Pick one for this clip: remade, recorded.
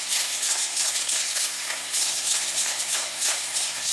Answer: remade